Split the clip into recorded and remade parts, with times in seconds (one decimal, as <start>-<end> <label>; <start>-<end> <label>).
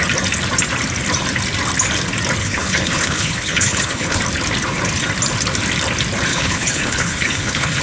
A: 0.0-2.4 recorded; 2.4-4.2 remade; 4.2-6.3 recorded; 6.3-7.8 remade